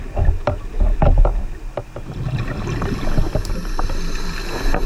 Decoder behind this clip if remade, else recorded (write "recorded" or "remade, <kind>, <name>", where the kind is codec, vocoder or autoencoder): recorded